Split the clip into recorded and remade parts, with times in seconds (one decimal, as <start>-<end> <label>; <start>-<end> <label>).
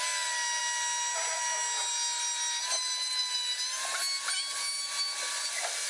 0.0-5.9 recorded